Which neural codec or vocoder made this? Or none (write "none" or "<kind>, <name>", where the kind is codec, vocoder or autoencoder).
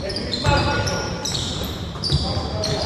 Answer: vocoder, BigVGAN v2